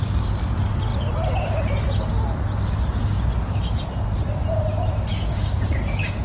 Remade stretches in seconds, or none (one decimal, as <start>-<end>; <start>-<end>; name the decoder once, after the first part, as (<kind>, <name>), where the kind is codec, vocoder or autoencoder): 5.1-6.2 (codec, DAC)